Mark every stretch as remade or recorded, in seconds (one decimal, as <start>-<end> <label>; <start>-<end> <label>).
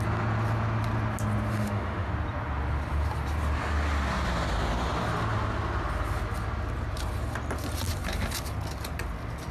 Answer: 0.0-1.5 recorded; 1.5-2.1 remade; 2.1-9.5 recorded